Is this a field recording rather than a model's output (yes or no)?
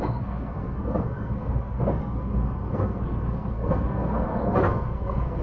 no